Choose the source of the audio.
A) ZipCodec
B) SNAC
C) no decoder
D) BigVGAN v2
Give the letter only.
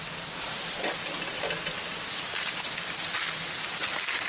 C